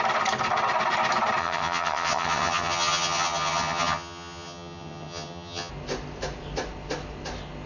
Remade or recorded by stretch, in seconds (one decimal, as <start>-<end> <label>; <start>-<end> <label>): 0.0-1.4 recorded; 1.4-5.7 remade; 5.7-7.7 recorded